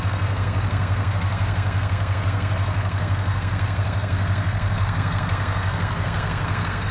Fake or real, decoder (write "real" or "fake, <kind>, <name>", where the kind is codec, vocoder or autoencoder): fake, codec, SNAC